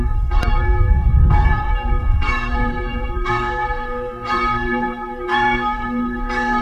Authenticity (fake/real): fake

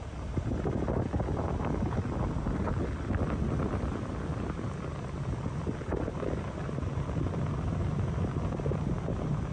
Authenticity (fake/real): real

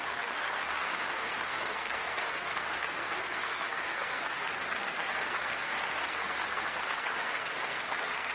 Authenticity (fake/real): fake